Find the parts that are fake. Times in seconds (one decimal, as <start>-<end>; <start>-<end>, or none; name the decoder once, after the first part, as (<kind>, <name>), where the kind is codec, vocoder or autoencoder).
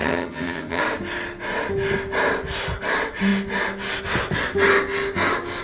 0.0-0.8 (vocoder, HiFi-GAN)